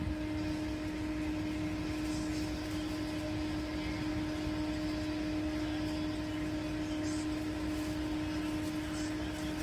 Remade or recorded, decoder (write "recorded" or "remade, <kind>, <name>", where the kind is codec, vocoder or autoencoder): recorded